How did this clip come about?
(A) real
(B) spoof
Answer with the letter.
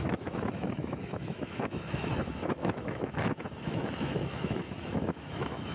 B